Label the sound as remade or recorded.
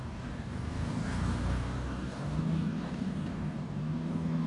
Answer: remade